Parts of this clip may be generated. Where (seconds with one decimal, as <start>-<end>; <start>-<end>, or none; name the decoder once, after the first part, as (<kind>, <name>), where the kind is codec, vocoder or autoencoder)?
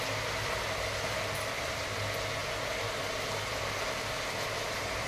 none